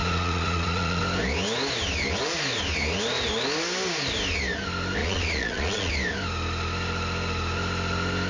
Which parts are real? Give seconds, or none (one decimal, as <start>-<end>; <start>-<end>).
1.0-5.0; 5.9-8.3